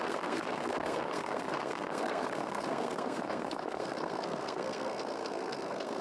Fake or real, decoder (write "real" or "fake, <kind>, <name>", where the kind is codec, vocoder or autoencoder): fake, codec, SNAC